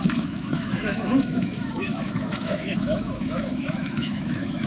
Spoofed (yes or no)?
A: yes